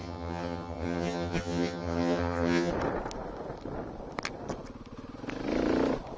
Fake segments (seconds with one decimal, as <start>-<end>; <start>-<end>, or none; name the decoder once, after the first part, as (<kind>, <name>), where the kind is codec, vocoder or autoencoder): 0.0-2.7 (vocoder, HiFi-GAN)